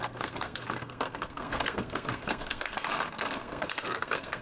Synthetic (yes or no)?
yes